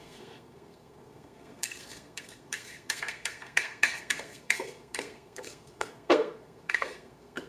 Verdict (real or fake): fake